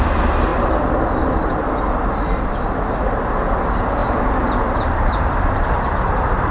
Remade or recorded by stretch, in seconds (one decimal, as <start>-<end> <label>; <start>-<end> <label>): 0.0-4.0 recorded; 4.0-6.0 remade; 6.0-6.5 recorded

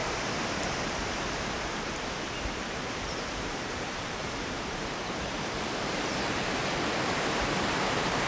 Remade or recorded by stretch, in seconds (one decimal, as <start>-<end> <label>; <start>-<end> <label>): 0.0-2.4 recorded; 2.4-6.6 remade; 6.6-7.6 recorded; 7.6-8.3 remade